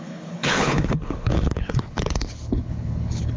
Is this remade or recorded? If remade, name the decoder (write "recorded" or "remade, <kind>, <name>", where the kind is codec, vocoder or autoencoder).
remade, codec, HILCodec